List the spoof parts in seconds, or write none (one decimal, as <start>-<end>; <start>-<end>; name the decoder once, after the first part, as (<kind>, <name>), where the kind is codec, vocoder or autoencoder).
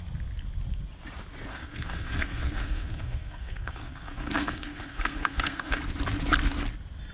1.5-5.8 (codec, SNAC)